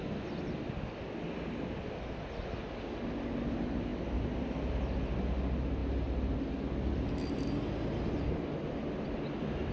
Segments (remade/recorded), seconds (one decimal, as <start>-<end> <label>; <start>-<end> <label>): 0.0-9.7 recorded